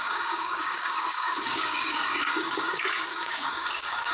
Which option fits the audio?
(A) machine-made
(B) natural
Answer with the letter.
A